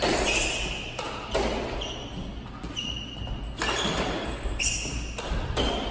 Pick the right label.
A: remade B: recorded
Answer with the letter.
B